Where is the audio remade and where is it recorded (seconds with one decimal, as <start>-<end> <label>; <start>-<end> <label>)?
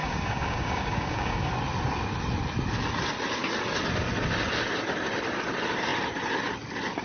0.0-1.5 remade; 1.5-7.0 recorded